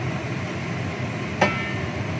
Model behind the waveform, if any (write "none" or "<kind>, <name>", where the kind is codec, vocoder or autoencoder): none